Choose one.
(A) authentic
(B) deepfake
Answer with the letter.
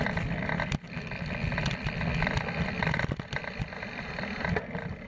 A